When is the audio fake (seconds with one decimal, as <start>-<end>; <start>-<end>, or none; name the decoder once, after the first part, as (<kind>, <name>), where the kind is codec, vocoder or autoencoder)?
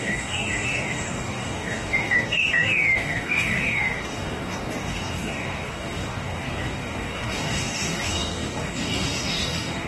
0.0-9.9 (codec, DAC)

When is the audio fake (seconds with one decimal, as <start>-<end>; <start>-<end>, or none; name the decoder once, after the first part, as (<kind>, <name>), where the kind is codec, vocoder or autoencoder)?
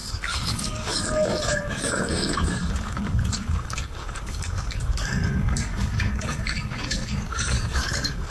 0.0-8.3 (codec, DAC)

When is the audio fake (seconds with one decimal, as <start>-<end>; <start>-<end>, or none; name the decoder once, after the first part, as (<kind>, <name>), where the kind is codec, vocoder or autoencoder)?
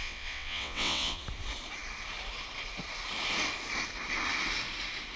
0.0-1.2 (vocoder, WaveNeXt)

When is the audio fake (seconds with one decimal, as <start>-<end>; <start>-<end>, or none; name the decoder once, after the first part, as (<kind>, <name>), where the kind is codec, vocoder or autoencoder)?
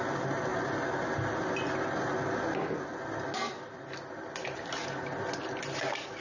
none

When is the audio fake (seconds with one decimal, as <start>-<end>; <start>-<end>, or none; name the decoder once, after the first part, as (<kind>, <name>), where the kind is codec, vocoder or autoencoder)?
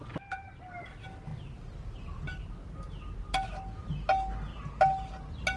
none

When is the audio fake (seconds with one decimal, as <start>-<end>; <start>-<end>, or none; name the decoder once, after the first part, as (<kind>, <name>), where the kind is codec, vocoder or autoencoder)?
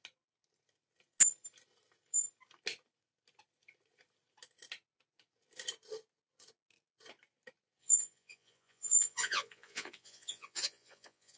7.8-11.4 (vocoder, Vocos)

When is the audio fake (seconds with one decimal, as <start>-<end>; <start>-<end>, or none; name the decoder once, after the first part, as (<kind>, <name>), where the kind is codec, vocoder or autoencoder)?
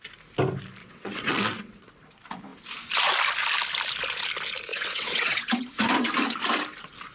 0.8-1.9 (vocoder, WaveNeXt); 4.7-5.6